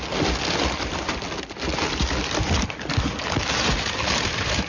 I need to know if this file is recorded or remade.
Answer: recorded